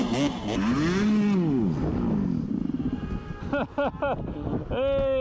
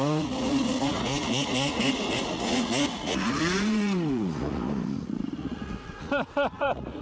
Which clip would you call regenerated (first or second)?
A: second